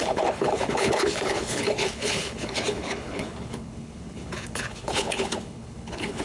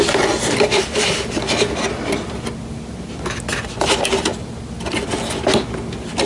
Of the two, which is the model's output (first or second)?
first